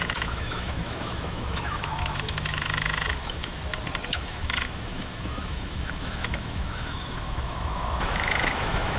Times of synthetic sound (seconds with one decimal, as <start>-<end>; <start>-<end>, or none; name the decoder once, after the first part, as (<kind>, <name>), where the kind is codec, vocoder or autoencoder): 0.0-3.6 (autoencoder, DAC-VAE); 4.1-9.0